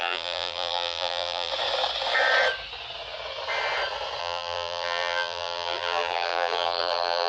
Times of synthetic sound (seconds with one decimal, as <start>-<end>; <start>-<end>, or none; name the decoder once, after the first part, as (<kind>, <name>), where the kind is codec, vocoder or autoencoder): 0.0-1.5 (vocoder, BigVGAN v2); 4.2-7.3